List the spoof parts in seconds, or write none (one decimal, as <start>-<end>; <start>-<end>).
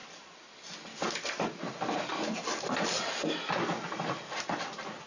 none